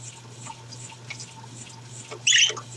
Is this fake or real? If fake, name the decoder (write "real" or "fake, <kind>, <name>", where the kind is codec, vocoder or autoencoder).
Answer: real